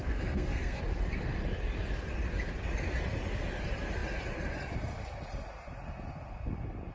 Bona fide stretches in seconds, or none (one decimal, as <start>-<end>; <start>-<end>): 0.8-6.9